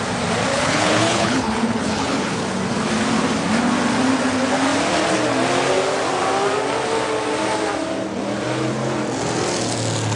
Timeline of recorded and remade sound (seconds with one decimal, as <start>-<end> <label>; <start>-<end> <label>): 0.0-0.5 recorded; 0.5-2.3 remade; 2.3-10.2 recorded